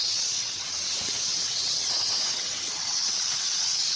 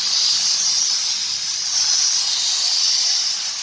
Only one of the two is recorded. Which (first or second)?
second